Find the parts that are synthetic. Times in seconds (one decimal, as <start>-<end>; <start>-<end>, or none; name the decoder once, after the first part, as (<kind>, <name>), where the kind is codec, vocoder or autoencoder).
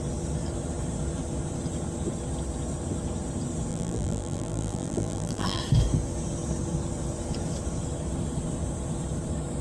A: 3.7-5.6 (vocoder, BigVGAN v2)